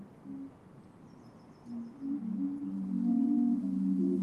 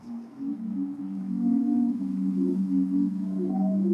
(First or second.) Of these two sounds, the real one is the first